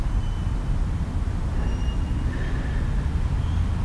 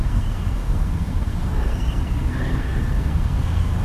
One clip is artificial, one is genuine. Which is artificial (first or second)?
second